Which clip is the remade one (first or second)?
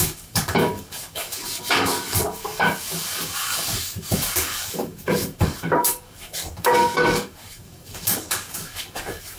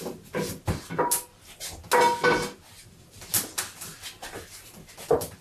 first